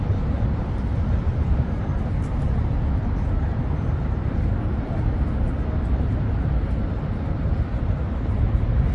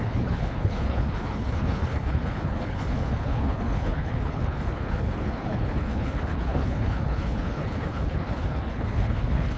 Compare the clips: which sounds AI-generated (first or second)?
second